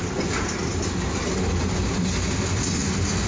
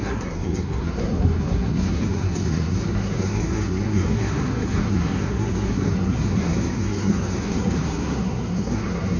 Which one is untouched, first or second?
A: first